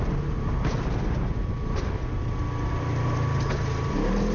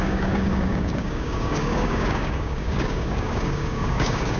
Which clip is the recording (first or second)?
first